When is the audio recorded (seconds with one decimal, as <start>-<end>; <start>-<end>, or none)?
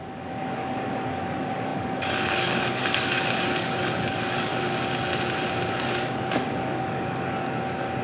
4.5-5.7